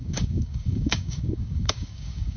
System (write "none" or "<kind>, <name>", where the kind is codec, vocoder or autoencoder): codec, DAC